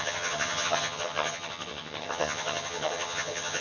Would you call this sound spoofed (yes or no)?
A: yes